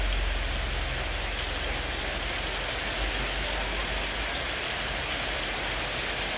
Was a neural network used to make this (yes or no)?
no